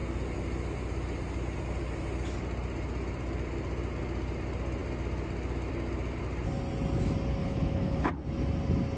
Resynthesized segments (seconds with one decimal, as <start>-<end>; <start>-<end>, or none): 7.4-8.1